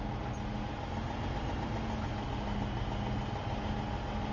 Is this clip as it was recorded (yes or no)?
yes